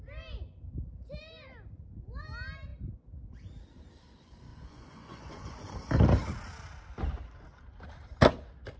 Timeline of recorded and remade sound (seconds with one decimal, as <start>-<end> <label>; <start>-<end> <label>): 0.0-4.5 recorded; 4.5-5.7 remade; 5.7-8.8 recorded